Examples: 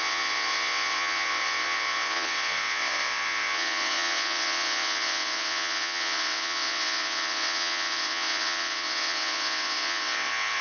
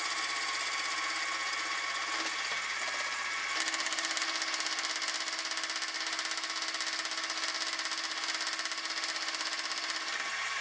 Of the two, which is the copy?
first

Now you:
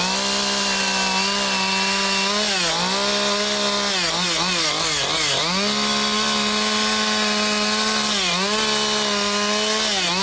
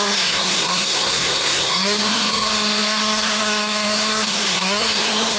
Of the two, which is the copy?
second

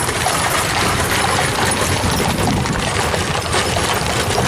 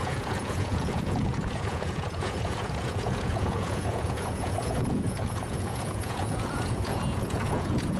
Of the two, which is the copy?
second